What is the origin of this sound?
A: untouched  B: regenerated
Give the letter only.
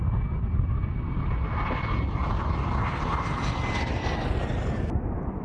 A